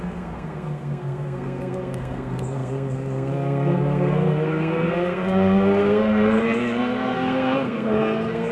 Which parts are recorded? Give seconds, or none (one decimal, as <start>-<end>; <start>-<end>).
none